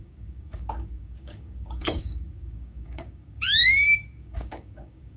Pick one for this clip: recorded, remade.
remade